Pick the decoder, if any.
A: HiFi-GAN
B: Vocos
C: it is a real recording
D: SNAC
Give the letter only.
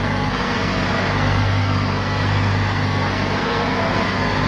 D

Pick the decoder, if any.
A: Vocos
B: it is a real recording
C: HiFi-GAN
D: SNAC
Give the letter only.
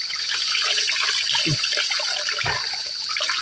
B